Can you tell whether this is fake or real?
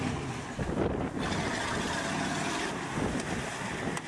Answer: real